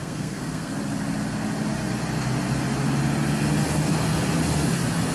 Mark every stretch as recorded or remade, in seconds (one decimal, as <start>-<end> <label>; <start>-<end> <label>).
0.0-0.7 remade; 0.7-5.1 recorded